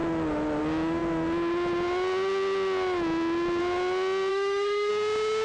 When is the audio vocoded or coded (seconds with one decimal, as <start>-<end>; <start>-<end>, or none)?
4.3-4.9